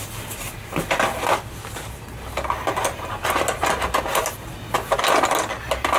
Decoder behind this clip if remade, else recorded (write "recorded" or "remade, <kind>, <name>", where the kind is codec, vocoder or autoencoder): recorded